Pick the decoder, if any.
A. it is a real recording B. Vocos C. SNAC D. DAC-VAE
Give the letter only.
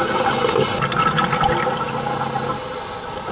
A